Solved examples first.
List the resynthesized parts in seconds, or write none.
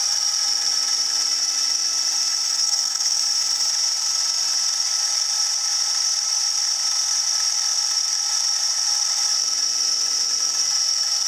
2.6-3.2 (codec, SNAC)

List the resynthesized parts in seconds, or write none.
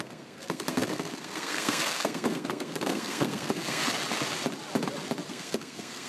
0.0-3.8 (codec, SNAC); 5.3-6.1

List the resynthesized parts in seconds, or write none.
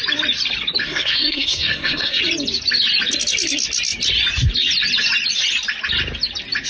0.8-2.2 (codec, SNAC)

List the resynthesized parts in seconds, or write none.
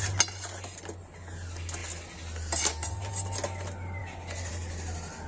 none